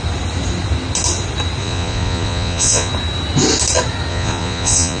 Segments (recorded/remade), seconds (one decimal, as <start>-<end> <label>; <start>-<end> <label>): 0.0-1.6 recorded; 1.6-2.9 remade; 2.9-4.1 recorded; 4.1-5.0 remade